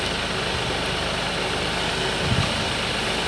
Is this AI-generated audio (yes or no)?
no